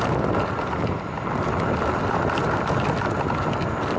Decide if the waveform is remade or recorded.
recorded